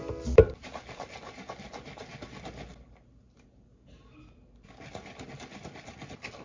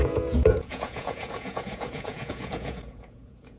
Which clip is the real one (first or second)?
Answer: first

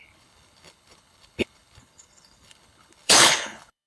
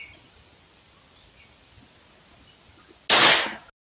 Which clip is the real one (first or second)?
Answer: second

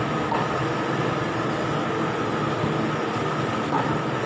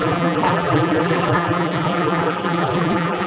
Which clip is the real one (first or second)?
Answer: first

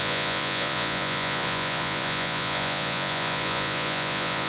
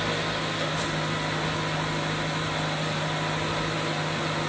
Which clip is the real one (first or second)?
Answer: second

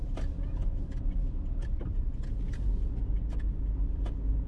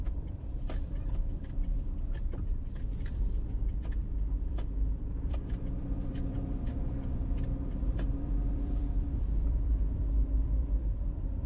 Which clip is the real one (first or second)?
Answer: first